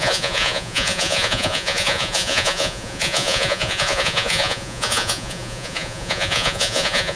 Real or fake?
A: fake